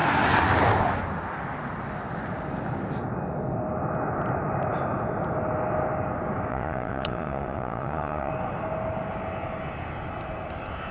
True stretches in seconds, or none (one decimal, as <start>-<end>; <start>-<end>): 0.0-6.5; 8.3-10.9